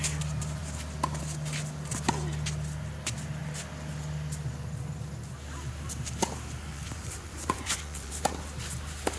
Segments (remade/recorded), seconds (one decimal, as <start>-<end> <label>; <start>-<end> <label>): 0.0-6.7 recorded; 6.7-8.1 remade; 8.1-9.2 recorded